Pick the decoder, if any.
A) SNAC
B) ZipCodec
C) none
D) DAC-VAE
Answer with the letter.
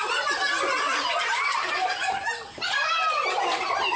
C